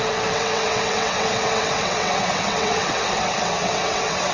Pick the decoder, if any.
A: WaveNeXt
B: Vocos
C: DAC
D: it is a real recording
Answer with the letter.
A